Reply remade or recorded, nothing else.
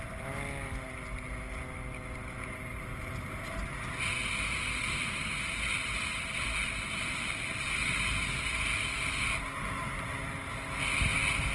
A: recorded